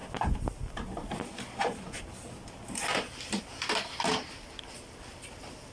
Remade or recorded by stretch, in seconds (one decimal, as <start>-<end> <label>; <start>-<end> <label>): 0.0-5.7 recorded